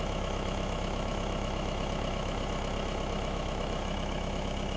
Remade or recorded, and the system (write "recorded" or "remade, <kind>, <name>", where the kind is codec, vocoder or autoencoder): remade, autoencoder, DAC-VAE